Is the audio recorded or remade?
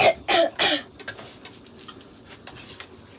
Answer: recorded